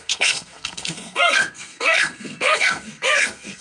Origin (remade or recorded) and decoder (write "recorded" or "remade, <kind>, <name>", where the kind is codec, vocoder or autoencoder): remade, codec, SNAC